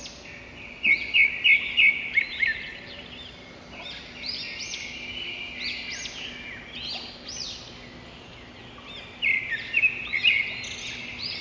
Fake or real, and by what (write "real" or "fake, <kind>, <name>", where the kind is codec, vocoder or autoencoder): real